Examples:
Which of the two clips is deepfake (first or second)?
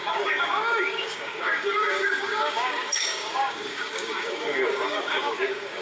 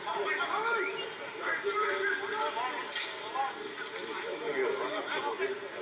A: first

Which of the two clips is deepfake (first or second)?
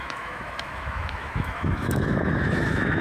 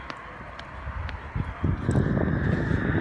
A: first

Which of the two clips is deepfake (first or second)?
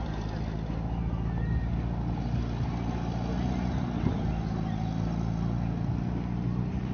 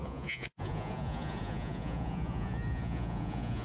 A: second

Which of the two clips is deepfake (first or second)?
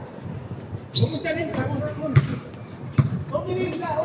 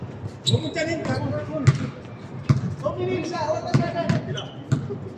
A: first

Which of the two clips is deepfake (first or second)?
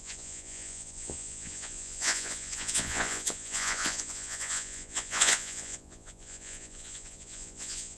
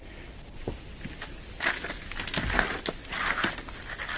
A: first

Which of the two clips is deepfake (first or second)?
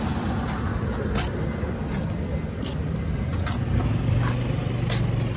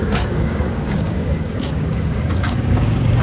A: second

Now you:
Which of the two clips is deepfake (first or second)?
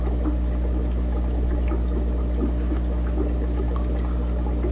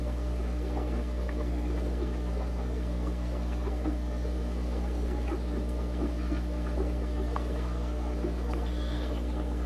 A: second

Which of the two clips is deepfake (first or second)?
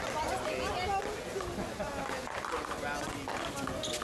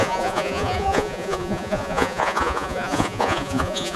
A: second